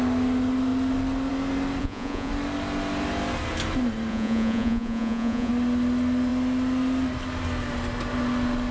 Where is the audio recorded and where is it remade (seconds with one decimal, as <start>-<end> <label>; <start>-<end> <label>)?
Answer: 0.0-1.8 recorded; 1.8-2.3 remade; 2.3-4.1 recorded; 4.1-5.5 remade; 5.5-8.7 recorded